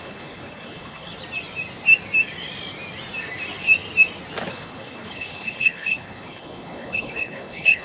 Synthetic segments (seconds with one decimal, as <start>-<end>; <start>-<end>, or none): 0.0-1.1; 4.5-7.8